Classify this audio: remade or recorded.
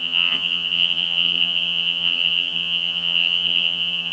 remade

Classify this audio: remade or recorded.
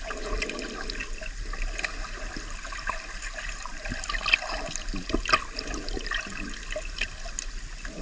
recorded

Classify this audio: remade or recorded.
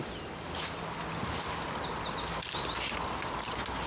recorded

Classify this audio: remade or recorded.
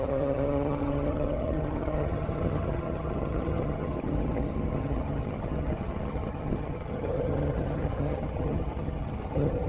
remade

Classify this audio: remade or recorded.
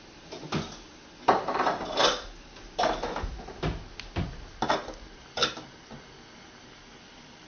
recorded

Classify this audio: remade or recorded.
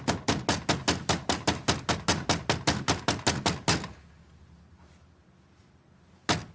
recorded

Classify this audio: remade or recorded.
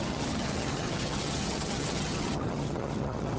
remade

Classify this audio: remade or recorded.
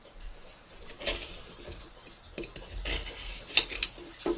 recorded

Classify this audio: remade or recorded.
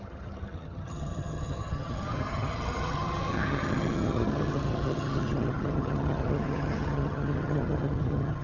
remade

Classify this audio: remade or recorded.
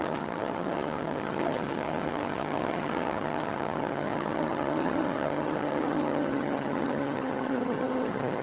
remade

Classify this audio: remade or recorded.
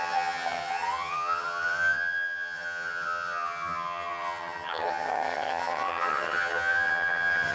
remade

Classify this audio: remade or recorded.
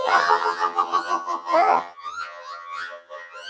remade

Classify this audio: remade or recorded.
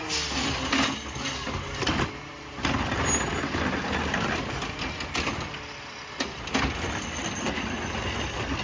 recorded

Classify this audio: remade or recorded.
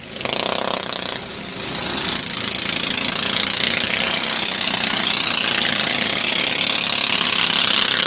recorded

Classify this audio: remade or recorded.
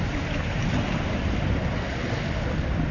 recorded